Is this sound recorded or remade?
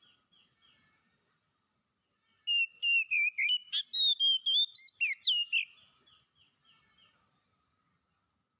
recorded